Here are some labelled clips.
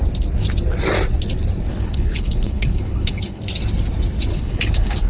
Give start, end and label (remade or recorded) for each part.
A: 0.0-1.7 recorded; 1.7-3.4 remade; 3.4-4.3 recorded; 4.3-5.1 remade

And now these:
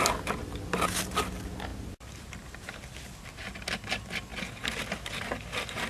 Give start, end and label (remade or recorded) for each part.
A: 0.0-5.9 recorded

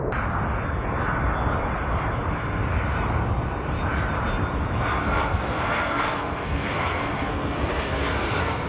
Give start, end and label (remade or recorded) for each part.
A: 0.0-4.9 recorded; 4.9-8.7 remade

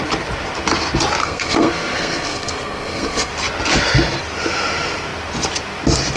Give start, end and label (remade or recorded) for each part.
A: 0.0-1.2 recorded; 1.2-3.3 remade; 3.3-6.2 recorded

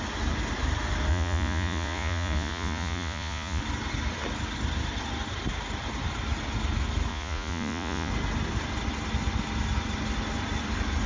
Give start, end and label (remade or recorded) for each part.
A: 0.0-1.1 recorded; 1.1-3.6 remade; 3.6-7.1 recorded; 7.1-8.1 remade; 8.1-11.1 recorded

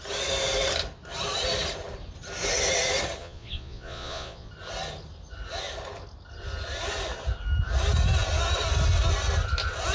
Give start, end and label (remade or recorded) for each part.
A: 0.0-3.2 recorded; 3.2-4.5 remade; 4.5-9.9 recorded

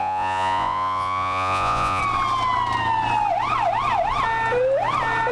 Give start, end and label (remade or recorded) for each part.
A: 0.0-2.0 remade; 2.0-5.3 recorded

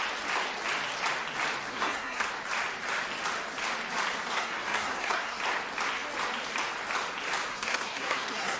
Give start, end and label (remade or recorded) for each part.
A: 0.0-1.7 recorded; 1.7-2.3 remade; 2.3-4.3 recorded; 4.3-5.4 remade; 5.4-7.5 recorded; 7.5-8.6 remade